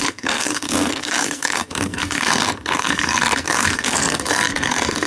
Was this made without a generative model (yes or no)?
no